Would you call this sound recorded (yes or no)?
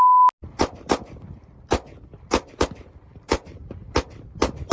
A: yes